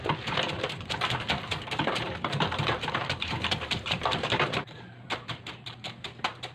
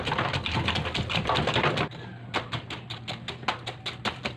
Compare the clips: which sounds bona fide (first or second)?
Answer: second